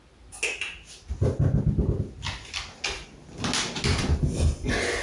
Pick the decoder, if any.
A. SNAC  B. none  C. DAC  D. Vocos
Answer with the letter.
B